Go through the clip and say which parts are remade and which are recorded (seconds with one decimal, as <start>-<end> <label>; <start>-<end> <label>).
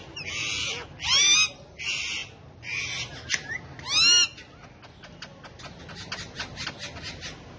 0.0-7.6 recorded